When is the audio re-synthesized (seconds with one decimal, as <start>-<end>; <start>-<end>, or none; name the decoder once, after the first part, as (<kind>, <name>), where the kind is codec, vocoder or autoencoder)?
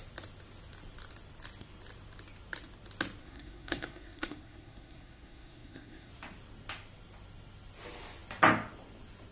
3.2-6.1 (codec, SNAC)